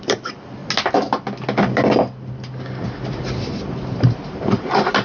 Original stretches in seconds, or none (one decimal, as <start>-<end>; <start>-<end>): 0.6-3.6